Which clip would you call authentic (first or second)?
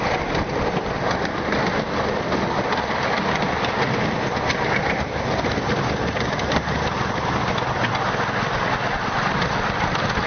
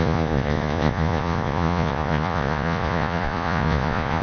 first